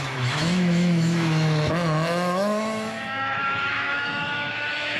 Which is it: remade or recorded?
remade